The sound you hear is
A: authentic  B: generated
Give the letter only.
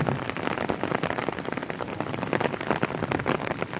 A